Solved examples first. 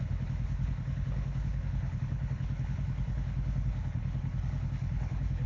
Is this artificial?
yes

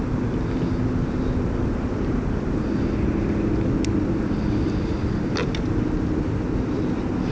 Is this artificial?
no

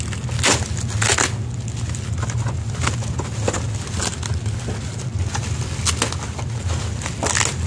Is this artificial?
no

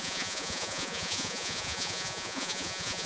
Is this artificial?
yes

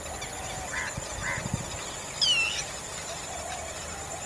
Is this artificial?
no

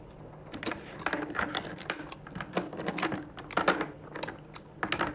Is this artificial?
no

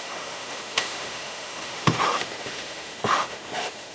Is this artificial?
yes